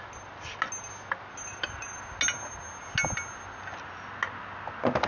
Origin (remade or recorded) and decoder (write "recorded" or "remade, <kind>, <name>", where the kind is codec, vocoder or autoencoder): recorded